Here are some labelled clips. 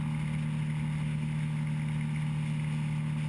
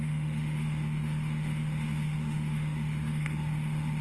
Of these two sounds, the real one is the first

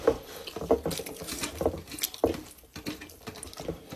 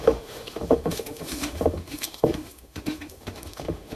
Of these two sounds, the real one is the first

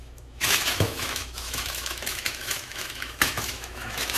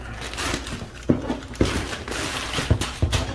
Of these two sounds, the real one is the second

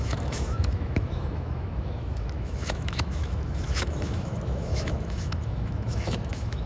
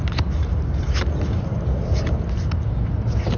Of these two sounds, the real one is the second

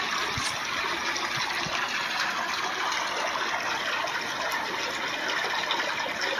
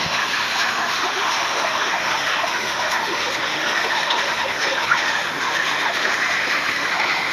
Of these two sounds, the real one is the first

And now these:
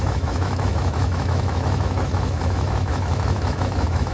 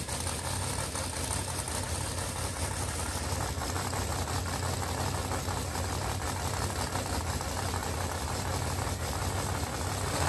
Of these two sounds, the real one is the second